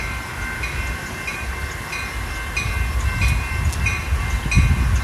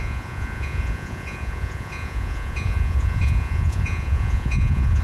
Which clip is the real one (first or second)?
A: first